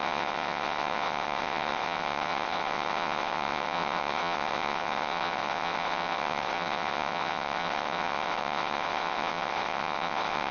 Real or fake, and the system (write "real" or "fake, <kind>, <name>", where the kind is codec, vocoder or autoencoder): fake, vocoder, WaveNeXt